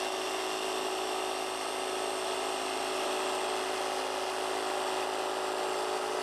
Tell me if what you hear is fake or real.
real